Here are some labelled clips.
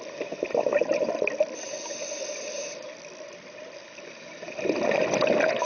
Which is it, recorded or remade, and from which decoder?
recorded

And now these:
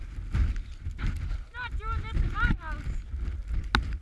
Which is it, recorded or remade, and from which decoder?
recorded